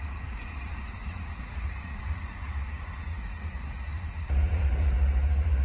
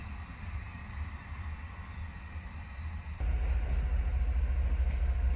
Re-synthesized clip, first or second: first